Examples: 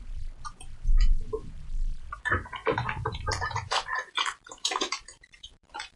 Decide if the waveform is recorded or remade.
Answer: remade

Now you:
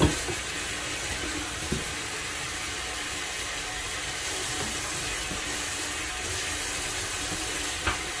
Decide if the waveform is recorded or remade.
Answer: recorded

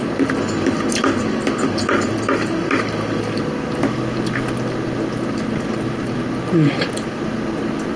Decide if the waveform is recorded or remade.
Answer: recorded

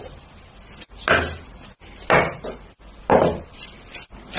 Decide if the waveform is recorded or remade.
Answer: recorded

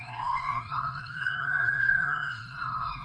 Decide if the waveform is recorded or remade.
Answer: remade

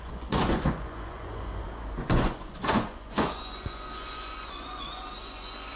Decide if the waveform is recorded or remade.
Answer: remade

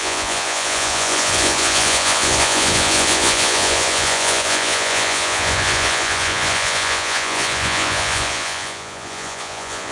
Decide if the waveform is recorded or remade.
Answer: remade